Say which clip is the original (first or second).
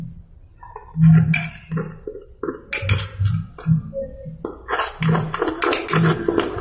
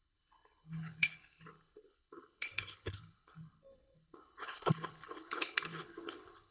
first